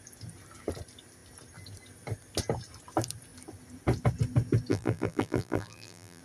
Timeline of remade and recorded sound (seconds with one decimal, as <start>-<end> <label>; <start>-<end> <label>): 0.0-4.7 recorded; 4.7-6.2 remade